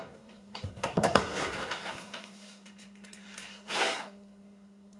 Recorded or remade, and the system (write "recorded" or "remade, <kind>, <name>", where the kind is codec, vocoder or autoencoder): remade, codec, SNAC